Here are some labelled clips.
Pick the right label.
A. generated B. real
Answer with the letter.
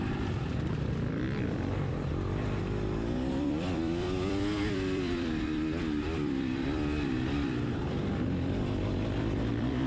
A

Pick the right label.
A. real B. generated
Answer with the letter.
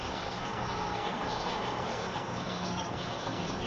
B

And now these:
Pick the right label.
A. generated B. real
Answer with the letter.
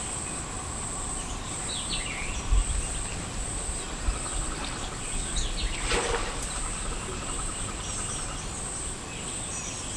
B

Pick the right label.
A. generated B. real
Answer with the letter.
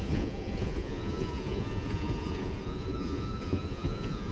A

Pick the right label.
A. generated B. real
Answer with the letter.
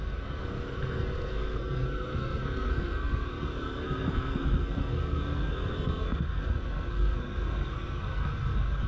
A